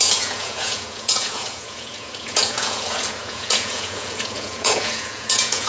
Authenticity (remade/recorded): remade